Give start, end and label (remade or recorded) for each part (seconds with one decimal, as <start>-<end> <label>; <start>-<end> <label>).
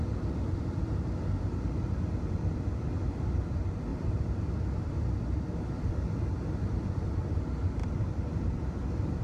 0.0-3.9 recorded; 3.9-4.9 remade; 4.9-7.8 recorded; 7.8-9.2 remade